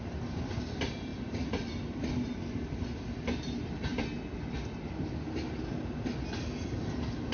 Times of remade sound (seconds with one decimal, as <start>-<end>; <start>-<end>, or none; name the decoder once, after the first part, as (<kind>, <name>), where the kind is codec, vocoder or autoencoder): none